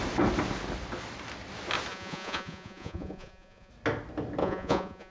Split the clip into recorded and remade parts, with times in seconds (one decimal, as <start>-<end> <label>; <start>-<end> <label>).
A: 0.0-1.9 recorded; 1.9-3.7 remade; 3.7-4.4 recorded; 4.4-5.1 remade